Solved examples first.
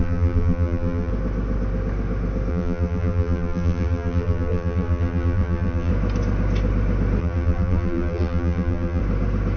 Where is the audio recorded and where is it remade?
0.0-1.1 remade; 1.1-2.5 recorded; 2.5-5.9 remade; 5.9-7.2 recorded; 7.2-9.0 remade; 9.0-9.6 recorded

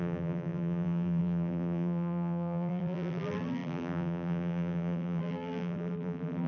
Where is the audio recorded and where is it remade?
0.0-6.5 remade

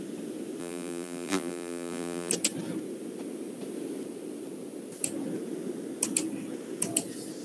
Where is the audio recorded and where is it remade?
0.0-0.6 recorded; 0.6-2.3 remade; 2.3-7.4 recorded